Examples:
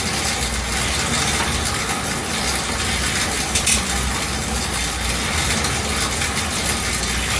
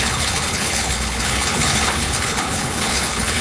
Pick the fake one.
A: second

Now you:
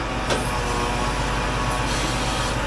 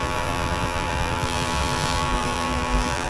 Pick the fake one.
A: second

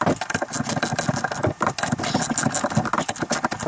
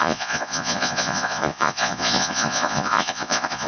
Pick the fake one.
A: second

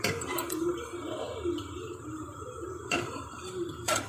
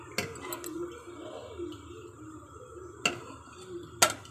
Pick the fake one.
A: first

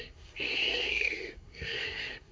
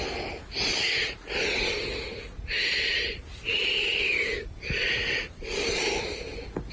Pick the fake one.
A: first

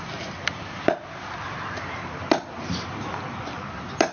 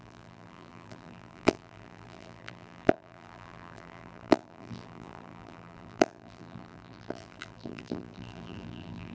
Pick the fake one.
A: second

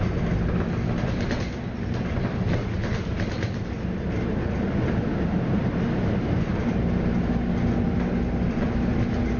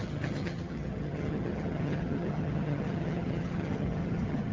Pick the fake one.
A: second